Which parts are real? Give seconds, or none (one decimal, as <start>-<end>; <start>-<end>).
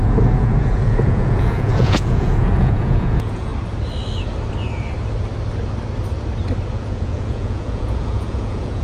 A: 3.5-6.7